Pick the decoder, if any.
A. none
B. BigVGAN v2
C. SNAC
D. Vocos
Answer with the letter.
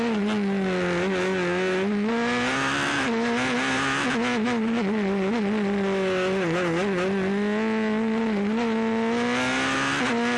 A